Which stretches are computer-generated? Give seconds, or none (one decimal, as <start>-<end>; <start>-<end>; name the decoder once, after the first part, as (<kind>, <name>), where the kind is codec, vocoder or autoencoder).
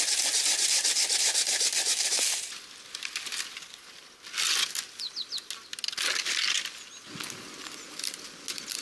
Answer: none